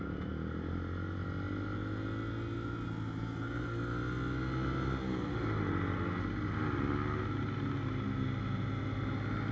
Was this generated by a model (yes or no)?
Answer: no